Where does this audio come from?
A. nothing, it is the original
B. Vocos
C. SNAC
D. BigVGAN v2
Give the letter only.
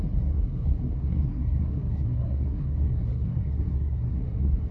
C